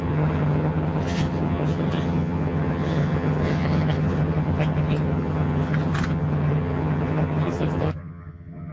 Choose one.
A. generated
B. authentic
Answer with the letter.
A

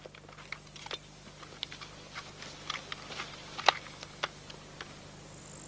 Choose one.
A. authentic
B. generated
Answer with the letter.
A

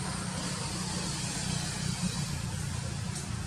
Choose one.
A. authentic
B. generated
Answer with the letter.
A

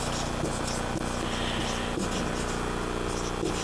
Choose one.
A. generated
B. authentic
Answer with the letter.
B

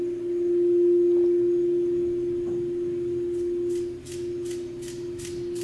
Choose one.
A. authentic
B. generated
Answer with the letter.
A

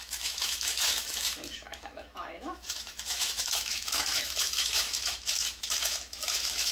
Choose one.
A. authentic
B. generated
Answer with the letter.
B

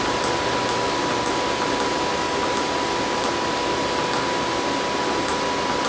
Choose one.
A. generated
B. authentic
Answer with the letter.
B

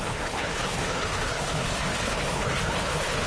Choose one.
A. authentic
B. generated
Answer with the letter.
B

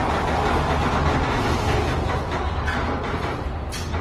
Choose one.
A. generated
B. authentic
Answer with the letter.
B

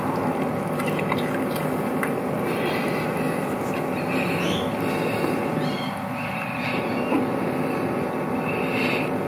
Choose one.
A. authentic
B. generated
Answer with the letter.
A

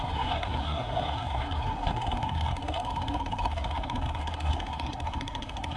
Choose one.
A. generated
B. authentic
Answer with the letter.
A